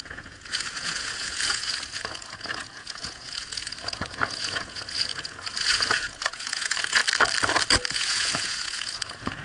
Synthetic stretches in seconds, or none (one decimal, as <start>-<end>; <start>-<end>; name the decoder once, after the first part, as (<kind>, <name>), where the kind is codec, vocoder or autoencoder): 0.0-7.0 (vocoder, Vocos); 7.9-9.4